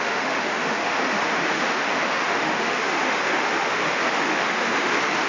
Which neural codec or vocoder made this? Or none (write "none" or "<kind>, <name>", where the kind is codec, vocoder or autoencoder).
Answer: autoencoder, DAC-VAE